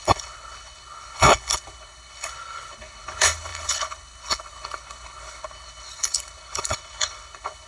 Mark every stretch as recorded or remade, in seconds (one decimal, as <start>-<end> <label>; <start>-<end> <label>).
0.0-7.7 remade